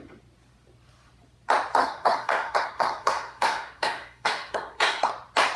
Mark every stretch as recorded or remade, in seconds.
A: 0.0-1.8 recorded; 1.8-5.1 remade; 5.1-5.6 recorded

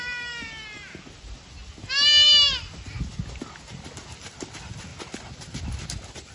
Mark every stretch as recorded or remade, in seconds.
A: 0.0-6.3 recorded

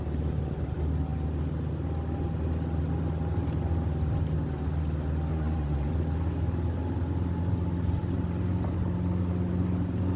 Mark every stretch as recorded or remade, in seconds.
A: 0.0-5.3 recorded; 5.3-5.9 remade; 5.9-10.2 recorded

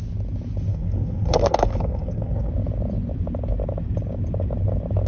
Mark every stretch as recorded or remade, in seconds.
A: 0.0-0.7 recorded; 0.7-2.5 remade; 2.5-5.1 recorded

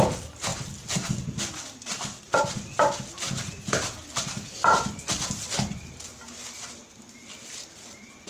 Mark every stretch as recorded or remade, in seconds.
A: 0.0-8.3 recorded

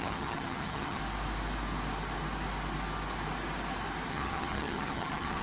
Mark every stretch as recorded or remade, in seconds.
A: 0.0-1.0 remade; 1.0-4.1 recorded; 4.1-5.4 remade

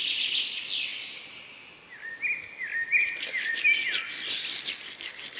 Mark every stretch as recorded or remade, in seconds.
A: 0.0-5.4 recorded

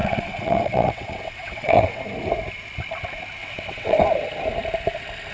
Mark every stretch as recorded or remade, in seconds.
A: 0.0-2.0 remade; 2.0-3.4 recorded; 3.4-4.0 remade; 4.0-5.3 recorded